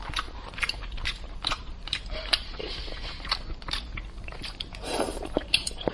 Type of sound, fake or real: fake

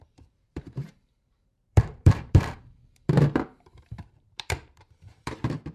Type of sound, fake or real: fake